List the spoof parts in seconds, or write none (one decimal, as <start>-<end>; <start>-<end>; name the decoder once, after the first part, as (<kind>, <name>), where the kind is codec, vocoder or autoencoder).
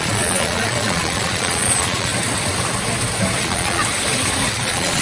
0.0-2.1 (vocoder, Vocos); 3.4-3.8; 4.5-5.0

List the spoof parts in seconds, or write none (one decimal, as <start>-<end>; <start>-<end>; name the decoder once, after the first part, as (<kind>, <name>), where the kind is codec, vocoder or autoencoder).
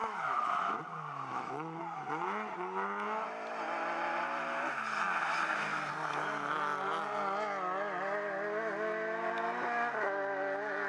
0.0-0.8 (autoencoder, DAC-VAE); 1.3-1.8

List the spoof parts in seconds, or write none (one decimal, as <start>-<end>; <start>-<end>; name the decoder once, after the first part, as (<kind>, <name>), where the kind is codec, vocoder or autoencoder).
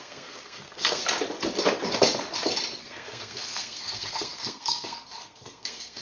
0.0-1.0 (codec, SNAC); 2.8-6.0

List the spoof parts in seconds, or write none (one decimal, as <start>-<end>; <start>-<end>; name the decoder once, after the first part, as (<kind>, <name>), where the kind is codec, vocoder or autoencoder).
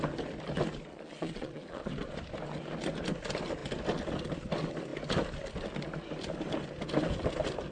0.9-1.9 (vocoder, Vocos)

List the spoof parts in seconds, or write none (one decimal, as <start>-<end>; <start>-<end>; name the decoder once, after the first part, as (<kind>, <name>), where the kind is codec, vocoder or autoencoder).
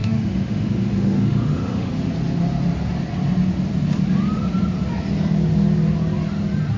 0.0-1.9 (autoencoder, DAC-VAE)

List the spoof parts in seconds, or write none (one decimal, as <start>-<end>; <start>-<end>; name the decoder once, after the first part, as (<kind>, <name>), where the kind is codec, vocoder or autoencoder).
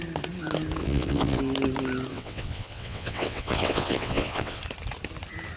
0.8-1.4 (vocoder, WaveNeXt); 2.1-4.6